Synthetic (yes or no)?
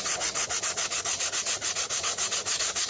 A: yes